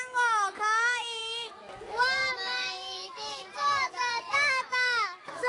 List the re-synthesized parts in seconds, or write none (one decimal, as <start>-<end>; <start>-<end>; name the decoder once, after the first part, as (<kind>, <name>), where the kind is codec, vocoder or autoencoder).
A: 0.0-5.5 (codec, DAC)